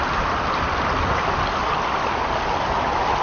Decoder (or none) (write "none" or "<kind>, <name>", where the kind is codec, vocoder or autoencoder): none